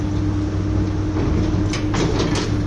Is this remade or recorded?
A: recorded